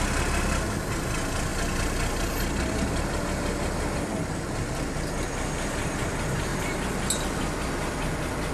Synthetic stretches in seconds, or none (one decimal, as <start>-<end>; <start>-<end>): none